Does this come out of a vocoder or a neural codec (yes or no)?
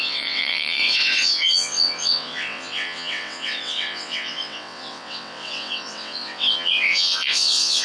yes